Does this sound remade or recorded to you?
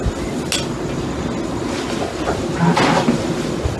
recorded